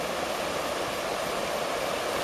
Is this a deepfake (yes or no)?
no